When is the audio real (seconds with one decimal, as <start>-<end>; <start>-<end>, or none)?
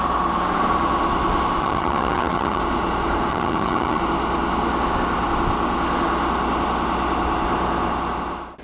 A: 0.0-1.6; 2.6-3.3; 4.0-8.6